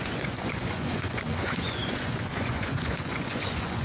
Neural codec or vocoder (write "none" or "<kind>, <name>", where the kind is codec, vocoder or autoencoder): vocoder, Vocos